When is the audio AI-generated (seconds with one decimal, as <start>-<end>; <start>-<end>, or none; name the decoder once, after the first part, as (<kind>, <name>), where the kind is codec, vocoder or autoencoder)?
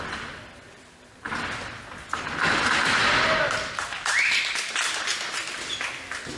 none